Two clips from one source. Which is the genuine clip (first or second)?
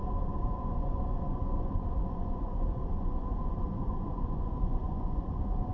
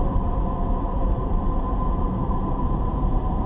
second